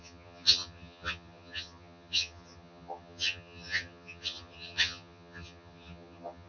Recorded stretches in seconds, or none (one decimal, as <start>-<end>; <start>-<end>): none